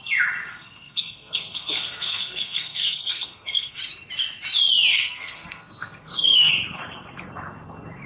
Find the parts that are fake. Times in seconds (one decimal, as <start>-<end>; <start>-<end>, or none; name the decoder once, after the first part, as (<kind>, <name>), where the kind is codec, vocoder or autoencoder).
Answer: 0.5-3.8 (codec, SNAC); 4.9-6.5